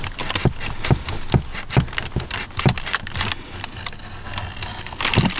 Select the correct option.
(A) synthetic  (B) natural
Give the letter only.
B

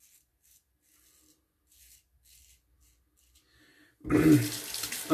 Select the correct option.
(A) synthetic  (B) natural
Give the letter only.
B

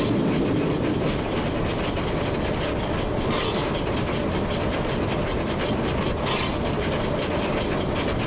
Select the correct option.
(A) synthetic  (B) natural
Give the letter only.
B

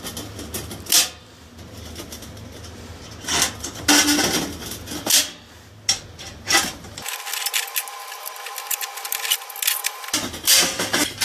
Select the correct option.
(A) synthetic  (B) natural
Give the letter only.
B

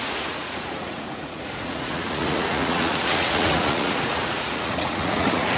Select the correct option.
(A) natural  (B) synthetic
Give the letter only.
B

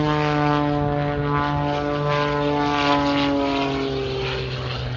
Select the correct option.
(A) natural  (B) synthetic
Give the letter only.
A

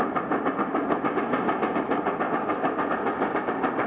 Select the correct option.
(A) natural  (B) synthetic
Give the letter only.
A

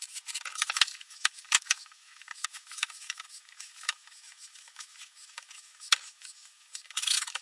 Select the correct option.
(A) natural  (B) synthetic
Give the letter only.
B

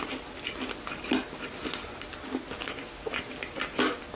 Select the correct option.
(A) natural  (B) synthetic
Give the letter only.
A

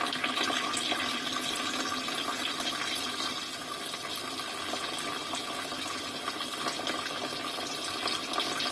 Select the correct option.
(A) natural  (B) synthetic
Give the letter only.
A